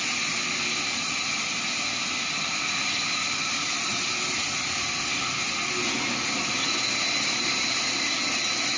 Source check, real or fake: real